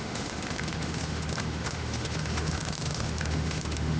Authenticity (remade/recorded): remade